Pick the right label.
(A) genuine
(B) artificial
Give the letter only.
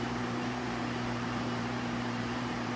B